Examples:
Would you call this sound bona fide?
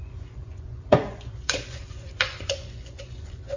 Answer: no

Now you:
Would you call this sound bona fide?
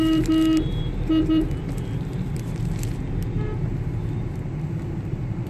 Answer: yes